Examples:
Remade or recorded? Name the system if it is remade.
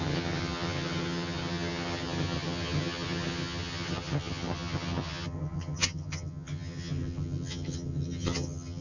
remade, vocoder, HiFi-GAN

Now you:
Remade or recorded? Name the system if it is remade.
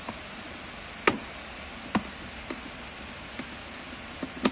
recorded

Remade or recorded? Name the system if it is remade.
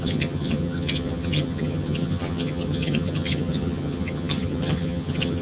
remade, vocoder, HiFi-GAN